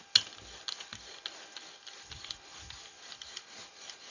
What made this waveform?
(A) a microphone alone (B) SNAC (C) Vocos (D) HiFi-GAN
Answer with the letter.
A